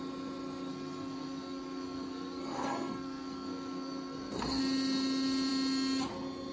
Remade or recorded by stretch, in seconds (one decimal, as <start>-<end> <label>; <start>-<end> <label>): 0.0-0.7 recorded; 0.7-4.6 remade; 4.6-6.5 recorded